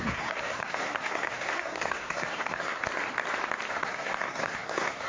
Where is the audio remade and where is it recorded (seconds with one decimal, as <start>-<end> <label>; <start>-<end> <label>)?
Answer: 0.0-2.8 remade; 2.8-3.7 recorded; 3.7-5.1 remade